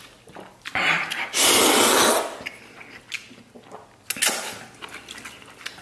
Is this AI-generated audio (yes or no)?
no